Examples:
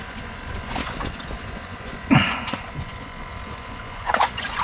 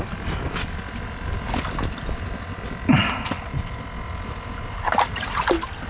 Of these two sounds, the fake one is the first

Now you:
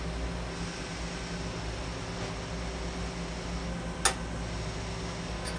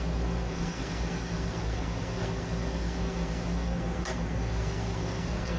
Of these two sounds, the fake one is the second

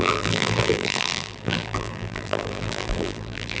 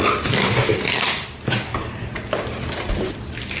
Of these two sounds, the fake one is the first